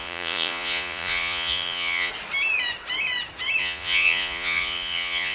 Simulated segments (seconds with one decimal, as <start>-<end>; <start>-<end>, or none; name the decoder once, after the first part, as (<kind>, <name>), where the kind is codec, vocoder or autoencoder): 0.0-2.1 (vocoder, Vocos); 3.6-5.3